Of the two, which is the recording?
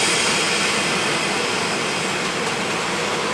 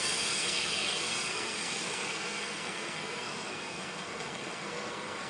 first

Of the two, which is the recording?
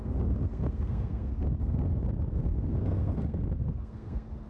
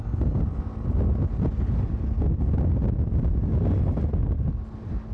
second